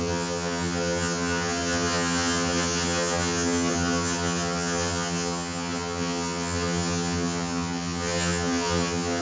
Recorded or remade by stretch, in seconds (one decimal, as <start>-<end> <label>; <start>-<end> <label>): 0.0-9.2 remade